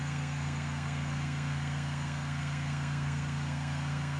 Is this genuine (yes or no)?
no